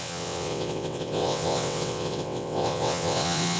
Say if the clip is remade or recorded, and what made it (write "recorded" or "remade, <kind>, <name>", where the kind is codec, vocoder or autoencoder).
remade, vocoder, WaveNeXt